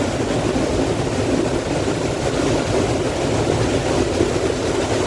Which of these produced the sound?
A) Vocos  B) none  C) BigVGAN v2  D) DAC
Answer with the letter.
B